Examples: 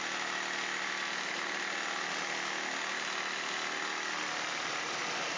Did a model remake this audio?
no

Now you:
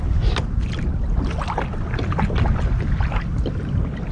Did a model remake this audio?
no